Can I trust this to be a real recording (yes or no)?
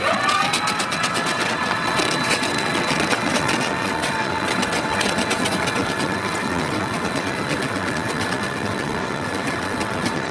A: no